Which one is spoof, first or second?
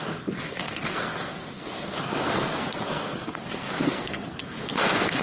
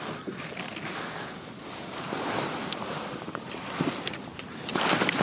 first